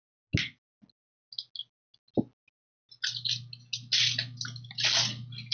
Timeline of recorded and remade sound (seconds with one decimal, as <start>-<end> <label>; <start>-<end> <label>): 0.0-5.5 recorded